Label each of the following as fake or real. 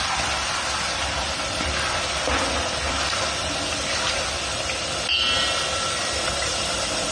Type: real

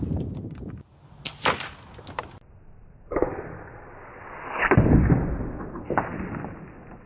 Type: real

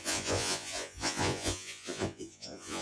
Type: fake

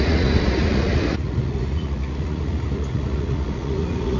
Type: fake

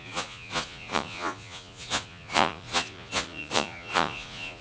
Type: fake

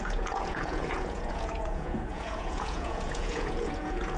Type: fake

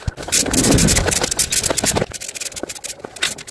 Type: real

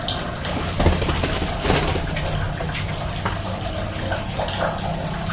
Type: real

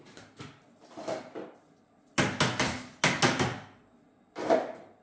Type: real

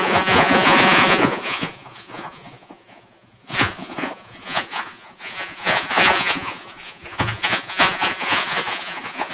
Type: fake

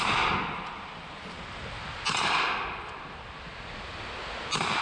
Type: real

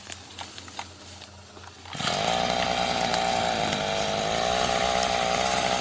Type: real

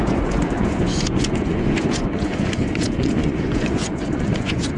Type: fake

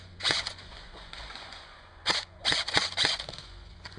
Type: fake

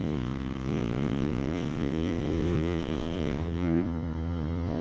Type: fake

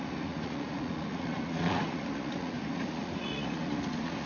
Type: fake